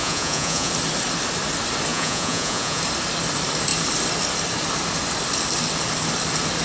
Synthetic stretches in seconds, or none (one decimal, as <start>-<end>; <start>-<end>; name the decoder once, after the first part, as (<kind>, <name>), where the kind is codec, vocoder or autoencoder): 0.0-0.7 (vocoder, Vocos); 1.9-2.8